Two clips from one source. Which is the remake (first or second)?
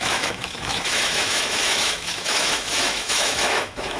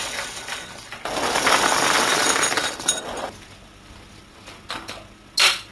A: first